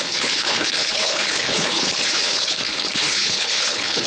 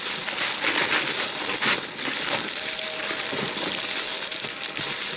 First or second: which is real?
second